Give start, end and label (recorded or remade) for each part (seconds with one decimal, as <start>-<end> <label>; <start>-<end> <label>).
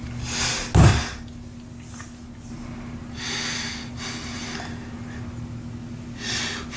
0.0-6.8 recorded